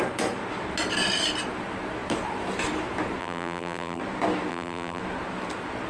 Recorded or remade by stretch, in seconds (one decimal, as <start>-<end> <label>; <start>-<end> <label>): 0.0-3.2 recorded; 3.2-4.0 remade; 4.0-4.5 recorded; 4.5-5.0 remade; 5.0-5.9 recorded